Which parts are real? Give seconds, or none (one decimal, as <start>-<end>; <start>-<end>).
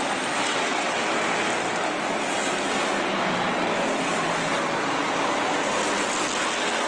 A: 0.0-0.5; 1.0-6.9